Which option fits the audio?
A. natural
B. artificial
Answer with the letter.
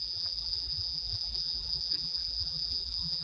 B